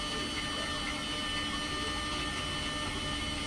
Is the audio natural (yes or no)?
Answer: yes